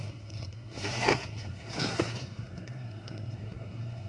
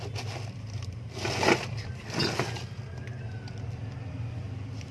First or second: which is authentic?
second